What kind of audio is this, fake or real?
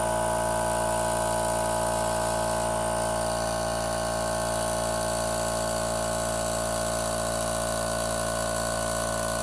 real